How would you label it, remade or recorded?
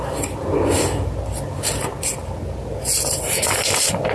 recorded